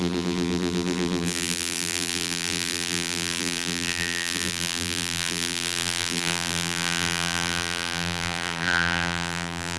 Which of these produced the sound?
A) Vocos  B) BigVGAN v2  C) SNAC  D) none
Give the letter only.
B